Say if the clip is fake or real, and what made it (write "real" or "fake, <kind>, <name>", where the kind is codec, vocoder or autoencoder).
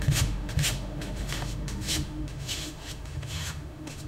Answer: fake, autoencoder, DAC-VAE